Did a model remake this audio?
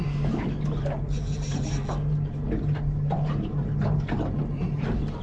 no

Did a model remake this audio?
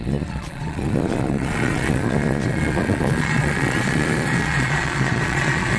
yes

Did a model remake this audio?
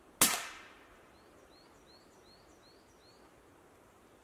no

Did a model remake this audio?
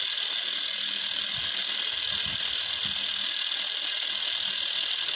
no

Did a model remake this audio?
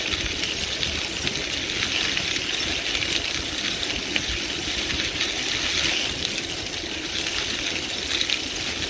no